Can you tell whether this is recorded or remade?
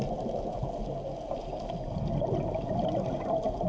recorded